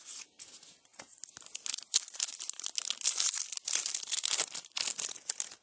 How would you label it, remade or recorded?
recorded